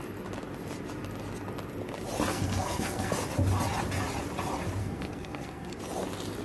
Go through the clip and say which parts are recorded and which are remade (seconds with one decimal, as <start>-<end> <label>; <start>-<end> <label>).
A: 0.0-2.3 recorded; 2.3-3.1 remade; 3.1-4.8 recorded; 4.8-5.8 remade; 5.8-6.4 recorded